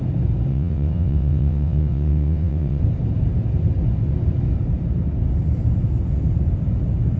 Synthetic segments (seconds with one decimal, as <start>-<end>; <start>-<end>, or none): 0.5-2.8